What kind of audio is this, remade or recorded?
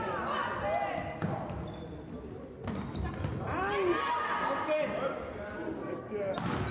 recorded